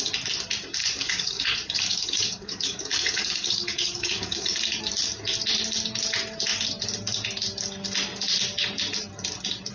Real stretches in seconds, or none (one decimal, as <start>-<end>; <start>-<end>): 0.0-0.8; 4.8-9.7

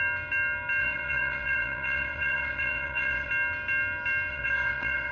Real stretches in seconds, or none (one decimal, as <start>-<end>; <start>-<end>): 0.0-0.8; 3.3-4.3

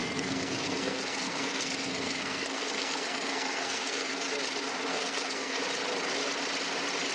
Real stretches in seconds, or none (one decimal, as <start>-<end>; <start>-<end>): 4.3-4.9; 5.6-7.1

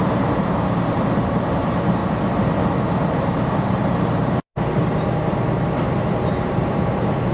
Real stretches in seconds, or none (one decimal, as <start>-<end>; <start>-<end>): 2.0-3.1; 4.8-5.8

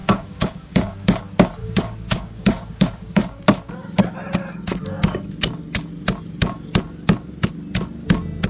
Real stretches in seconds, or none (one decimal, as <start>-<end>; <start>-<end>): 1.2-1.6; 3.4-8.5

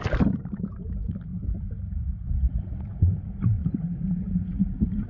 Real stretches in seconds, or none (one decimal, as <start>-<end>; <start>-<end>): 1.3-3.4

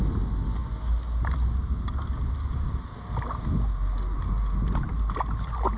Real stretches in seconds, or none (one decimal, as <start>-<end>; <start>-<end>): 0.0-5.8